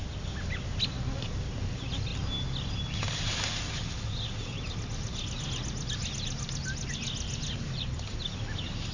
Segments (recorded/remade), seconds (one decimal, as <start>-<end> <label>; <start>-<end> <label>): 0.0-8.9 recorded